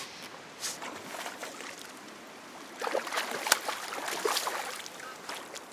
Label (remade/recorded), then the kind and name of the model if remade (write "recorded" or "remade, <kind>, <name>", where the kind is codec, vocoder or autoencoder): recorded